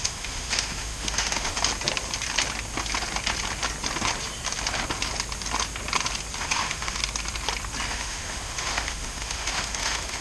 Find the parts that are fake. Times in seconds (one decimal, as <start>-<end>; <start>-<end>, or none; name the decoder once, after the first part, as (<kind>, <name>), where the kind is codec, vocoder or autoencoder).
0.0-1.5 (autoencoder, DAC-VAE); 6.4-7.0; 7.9-10.2